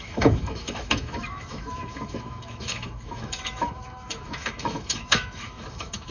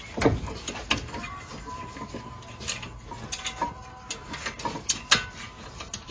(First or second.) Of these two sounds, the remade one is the first